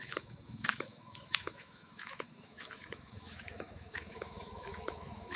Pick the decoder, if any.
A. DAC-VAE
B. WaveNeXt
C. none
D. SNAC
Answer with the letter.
A